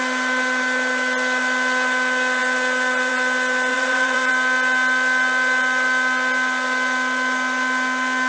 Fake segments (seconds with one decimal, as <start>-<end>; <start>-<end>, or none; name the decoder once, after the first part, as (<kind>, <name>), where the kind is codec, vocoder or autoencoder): 3.7-4.3 (vocoder, Vocos)